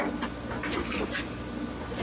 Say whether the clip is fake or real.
real